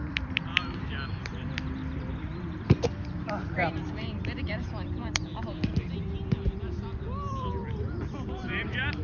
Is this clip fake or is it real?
fake